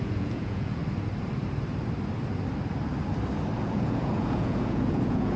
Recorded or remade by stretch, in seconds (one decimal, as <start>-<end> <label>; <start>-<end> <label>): 0.0-0.8 remade; 0.8-3.6 recorded; 3.6-5.4 remade